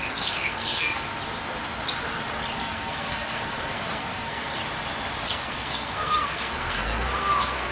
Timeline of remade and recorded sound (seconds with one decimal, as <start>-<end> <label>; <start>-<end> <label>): 0.0-1.1 remade; 1.1-2.6 recorded; 2.6-4.6 remade; 4.6-5.3 recorded; 5.3-7.7 remade